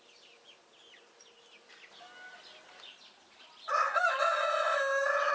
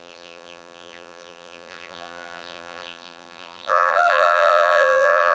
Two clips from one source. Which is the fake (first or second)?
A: second